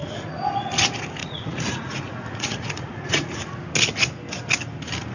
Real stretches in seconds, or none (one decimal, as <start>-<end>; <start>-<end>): 0.7-1.2; 3.5-5.1